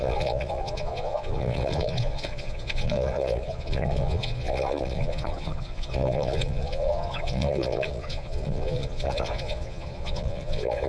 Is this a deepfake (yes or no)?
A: yes